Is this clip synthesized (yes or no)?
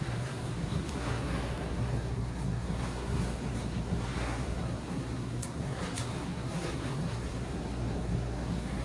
yes